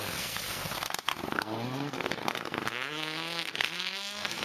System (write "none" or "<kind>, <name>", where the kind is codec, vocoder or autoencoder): codec, SNAC